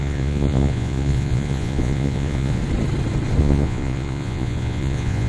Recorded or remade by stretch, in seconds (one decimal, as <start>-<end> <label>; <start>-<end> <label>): 0.0-2.6 remade; 2.6-3.4 recorded; 3.4-5.3 remade